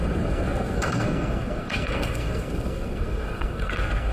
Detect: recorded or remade remade